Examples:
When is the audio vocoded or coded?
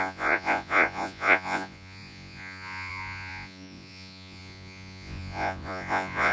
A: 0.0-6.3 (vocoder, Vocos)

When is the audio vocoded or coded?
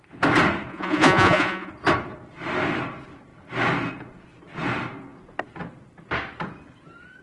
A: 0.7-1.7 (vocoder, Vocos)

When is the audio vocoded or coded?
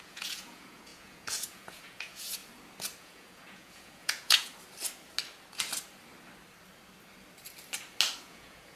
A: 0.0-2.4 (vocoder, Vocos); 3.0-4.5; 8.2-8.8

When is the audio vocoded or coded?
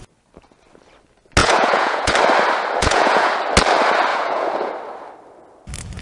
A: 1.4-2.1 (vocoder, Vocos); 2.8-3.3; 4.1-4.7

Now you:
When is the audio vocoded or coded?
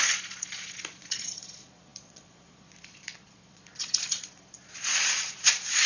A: 0.0-5.9 (vocoder, Vocos)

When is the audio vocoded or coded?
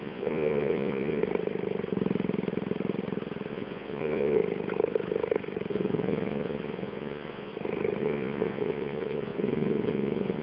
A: 0.0-1.2 (vocoder, Vocos); 3.5-4.4; 5.7-7.5; 8.0-10.4